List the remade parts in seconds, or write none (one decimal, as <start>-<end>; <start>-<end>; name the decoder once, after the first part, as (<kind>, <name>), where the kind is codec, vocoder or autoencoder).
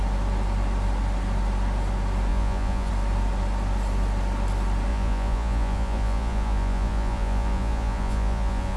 2.3-2.9 (vocoder, Vocos); 4.9-8.8